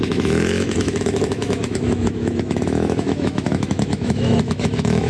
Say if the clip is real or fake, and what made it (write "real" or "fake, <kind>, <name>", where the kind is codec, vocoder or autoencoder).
fake, autoencoder, DAC-VAE